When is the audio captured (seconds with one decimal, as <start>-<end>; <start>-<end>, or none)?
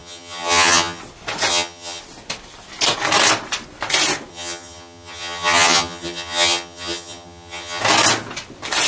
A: 1.0-1.5; 2.0-4.3; 7.8-8.9